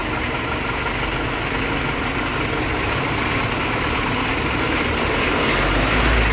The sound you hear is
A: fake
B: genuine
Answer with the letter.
B